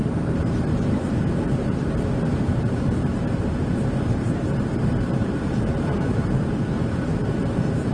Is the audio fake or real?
fake